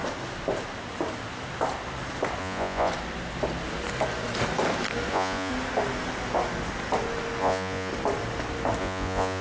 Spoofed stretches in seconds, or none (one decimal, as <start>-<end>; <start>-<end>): 2.4-2.9; 5.1-5.5; 7.4-7.9; 8.8-9.4